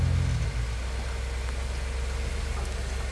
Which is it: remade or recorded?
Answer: recorded